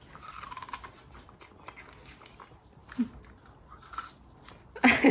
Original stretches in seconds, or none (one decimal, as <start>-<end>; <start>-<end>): 0.0-5.1